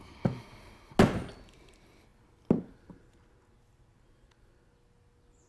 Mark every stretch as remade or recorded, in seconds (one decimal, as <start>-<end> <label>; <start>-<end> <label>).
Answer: 0.0-5.5 recorded